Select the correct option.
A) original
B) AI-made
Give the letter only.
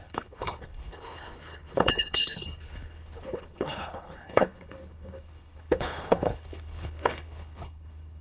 B